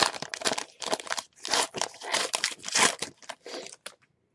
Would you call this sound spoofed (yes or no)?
no